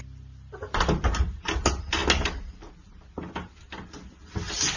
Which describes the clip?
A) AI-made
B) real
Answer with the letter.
B